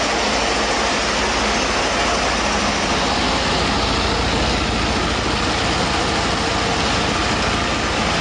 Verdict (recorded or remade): recorded